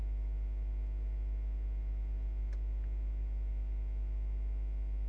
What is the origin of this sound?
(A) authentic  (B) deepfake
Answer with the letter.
A